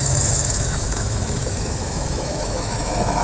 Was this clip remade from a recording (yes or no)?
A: yes